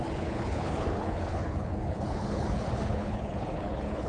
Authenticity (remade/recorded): remade